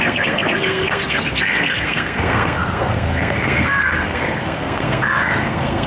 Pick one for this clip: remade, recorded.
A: remade